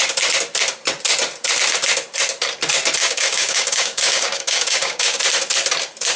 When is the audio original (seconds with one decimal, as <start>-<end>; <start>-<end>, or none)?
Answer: 0.0-3.0; 5.2-6.2